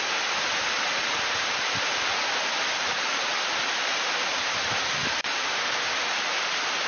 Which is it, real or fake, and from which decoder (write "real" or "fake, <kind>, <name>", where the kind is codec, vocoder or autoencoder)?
real